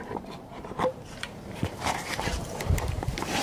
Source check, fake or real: fake